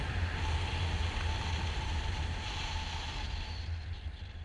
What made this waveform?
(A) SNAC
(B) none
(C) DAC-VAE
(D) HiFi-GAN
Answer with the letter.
B